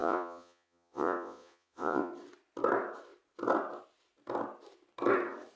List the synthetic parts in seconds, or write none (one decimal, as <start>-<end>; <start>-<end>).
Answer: 0.0-2.1

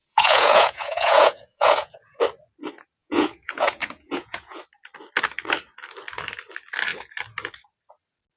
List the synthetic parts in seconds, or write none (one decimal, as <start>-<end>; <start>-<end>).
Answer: 0.0-2.2; 3.0-4.6

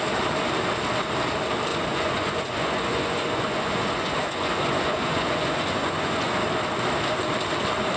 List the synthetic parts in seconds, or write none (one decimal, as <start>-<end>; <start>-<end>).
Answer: 1.7-6.3